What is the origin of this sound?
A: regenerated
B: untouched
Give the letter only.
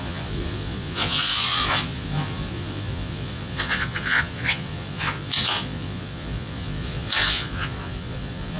A